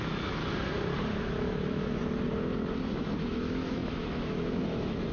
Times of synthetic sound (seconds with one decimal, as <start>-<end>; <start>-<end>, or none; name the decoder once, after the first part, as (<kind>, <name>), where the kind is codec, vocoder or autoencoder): 0.0-0.4 (autoencoder, DAC-VAE); 1.2-2.0; 2.9-5.1